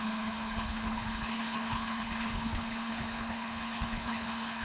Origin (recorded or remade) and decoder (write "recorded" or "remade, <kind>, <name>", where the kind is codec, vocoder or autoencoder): remade, codec, HILCodec